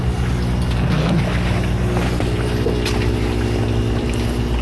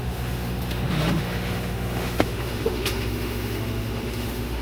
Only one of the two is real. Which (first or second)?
first